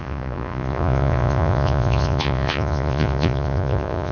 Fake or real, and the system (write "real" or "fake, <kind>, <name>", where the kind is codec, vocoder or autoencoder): fake, vocoder, Vocos